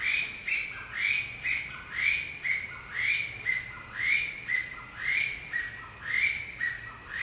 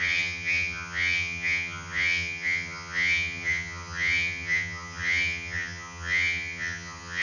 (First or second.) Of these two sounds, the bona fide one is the first